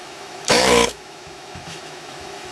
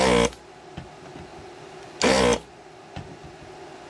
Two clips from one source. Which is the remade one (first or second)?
first